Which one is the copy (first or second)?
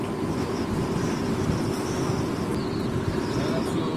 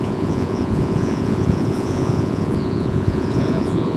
second